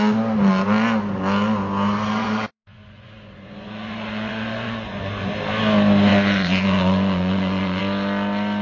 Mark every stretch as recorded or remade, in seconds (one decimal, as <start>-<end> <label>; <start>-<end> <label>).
0.0-2.2 recorded; 2.2-5.3 remade; 5.3-6.1 recorded; 6.1-7.8 remade; 7.8-8.6 recorded